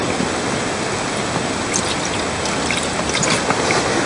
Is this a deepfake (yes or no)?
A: no